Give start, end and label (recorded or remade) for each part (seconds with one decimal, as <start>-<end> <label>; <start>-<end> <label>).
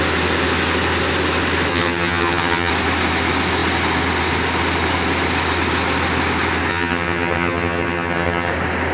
0.0-1.7 recorded; 1.7-2.7 remade; 2.7-6.7 recorded; 6.7-8.5 remade; 8.5-8.9 recorded